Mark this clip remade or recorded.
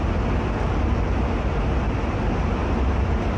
recorded